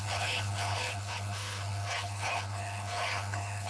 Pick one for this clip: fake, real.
fake